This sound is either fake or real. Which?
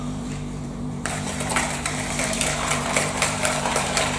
fake